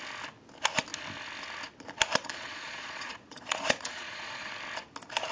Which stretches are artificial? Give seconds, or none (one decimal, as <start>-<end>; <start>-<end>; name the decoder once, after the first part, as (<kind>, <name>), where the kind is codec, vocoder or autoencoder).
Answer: 2.2-4.5 (vocoder, Vocos)